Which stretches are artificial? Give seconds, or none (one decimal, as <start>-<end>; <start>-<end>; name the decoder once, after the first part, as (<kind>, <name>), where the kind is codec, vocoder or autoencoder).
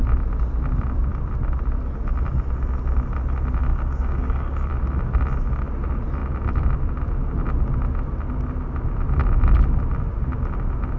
3.7-4.7 (codec, DAC)